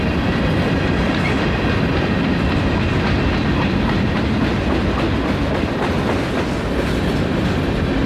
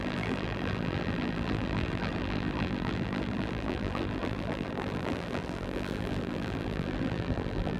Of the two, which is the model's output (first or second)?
second